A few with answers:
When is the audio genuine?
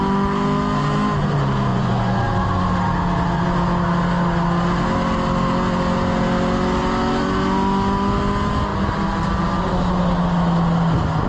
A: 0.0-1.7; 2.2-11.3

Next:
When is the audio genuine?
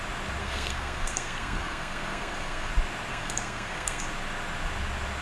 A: 0.0-0.4; 2.7-3.1; 4.0-5.2